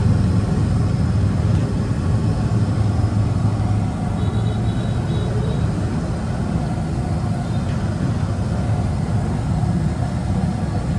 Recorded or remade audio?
recorded